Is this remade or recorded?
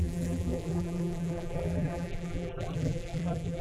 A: remade